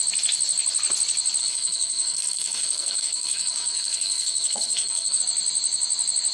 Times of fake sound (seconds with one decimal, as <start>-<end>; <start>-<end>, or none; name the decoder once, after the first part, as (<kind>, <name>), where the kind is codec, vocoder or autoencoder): 1.4-5.2 (codec, SNAC)